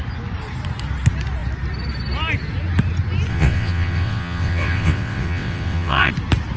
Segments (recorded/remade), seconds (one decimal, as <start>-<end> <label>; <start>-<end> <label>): 0.0-3.3 recorded; 3.3-6.1 remade; 6.1-6.6 recorded